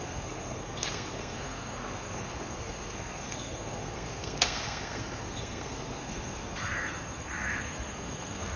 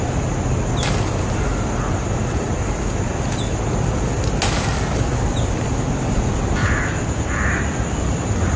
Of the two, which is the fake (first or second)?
first